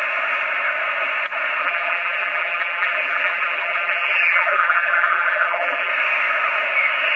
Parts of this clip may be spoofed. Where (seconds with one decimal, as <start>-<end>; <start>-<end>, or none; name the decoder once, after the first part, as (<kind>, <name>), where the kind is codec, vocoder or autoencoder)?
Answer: 1.6-5.9 (vocoder, BigVGAN v2)